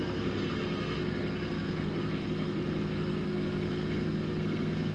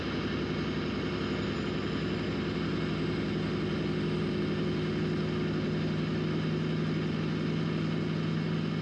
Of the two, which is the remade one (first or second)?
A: first